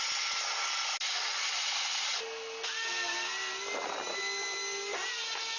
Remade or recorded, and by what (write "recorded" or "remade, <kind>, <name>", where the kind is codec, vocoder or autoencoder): recorded